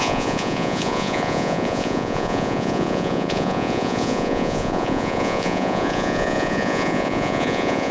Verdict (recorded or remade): remade